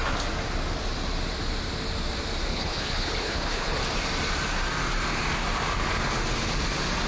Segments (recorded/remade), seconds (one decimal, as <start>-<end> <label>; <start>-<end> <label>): 0.0-2.5 recorded; 2.5-3.8 remade; 3.8-7.1 recorded